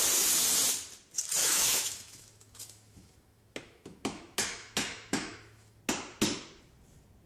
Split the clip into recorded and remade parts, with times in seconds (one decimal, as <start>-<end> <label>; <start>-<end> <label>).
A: 0.0-1.4 recorded; 1.4-5.8 remade; 5.8-7.3 recorded